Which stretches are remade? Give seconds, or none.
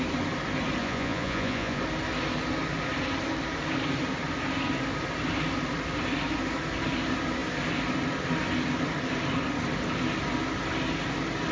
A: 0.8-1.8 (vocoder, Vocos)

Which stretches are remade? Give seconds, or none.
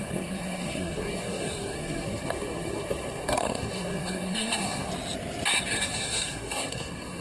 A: 0.0-4.9 (codec, SNAC); 5.7-7.2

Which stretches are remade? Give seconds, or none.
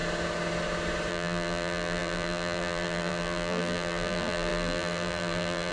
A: 1.1-5.7 (vocoder, BigVGAN v2)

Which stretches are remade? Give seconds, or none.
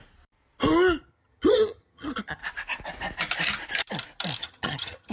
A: 1.0-2.4 (vocoder, HiFi-GAN); 4.4-5.1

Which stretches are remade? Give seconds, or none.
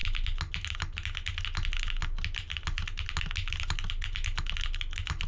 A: none